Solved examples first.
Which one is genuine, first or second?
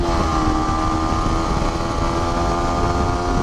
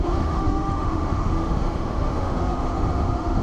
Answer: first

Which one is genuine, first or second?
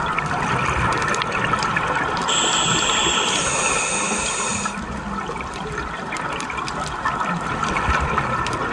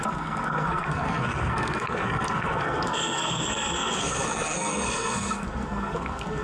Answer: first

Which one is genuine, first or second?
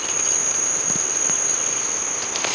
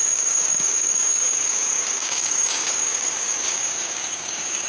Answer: first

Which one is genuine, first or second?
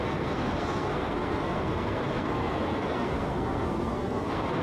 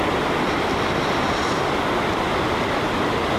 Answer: second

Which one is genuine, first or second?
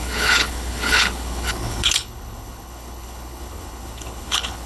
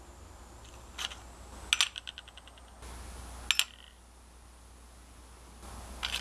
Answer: second